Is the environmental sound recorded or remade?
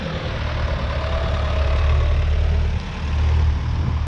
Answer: recorded